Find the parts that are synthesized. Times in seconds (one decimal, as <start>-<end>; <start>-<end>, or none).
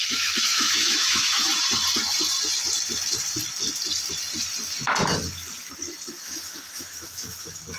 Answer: 0.0-1.5; 6.1-7.8